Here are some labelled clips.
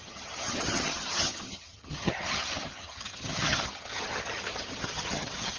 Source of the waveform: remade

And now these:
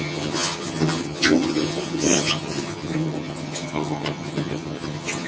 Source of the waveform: remade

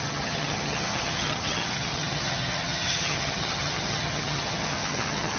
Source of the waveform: remade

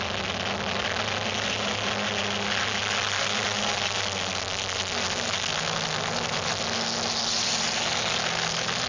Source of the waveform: recorded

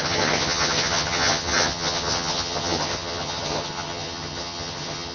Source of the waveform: remade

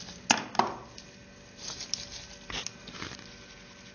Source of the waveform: recorded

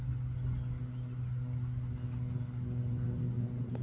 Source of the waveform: recorded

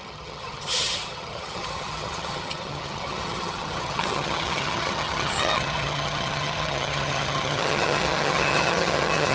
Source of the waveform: remade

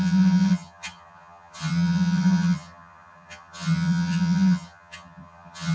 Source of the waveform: remade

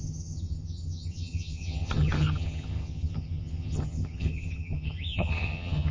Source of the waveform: remade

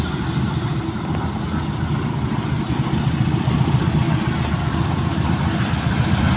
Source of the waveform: recorded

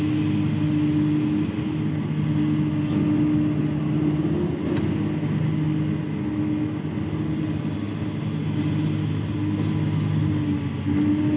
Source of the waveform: recorded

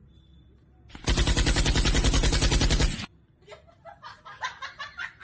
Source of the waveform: recorded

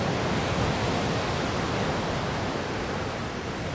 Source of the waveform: recorded